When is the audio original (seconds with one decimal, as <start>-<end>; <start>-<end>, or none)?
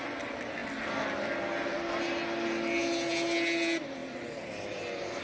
0.0-5.2